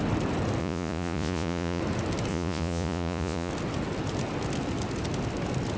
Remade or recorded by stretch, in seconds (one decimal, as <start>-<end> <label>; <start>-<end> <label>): 0.0-0.6 recorded; 0.6-1.8 remade; 1.8-2.3 recorded; 2.3-3.5 remade; 3.5-5.8 recorded